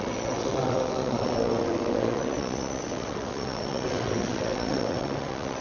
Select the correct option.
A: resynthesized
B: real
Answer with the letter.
A